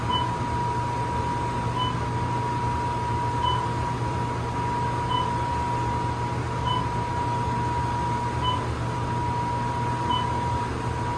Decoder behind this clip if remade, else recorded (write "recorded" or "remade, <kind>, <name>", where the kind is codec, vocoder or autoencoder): recorded